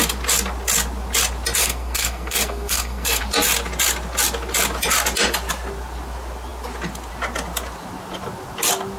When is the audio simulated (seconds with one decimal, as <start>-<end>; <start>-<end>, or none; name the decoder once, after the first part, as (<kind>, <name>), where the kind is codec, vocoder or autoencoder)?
1.6-3.2 (codec, SNAC)